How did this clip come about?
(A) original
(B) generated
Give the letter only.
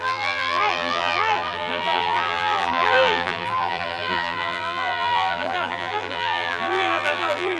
B